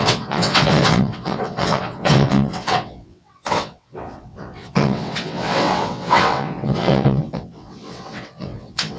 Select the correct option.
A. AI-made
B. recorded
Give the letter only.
A